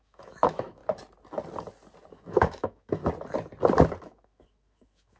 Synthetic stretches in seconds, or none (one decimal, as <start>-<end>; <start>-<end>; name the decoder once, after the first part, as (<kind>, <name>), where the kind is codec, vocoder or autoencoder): 0.0-0.8 (autoencoder, DAC-VAE); 2.1-3.0; 4.0-5.2